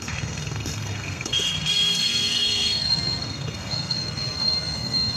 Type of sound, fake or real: fake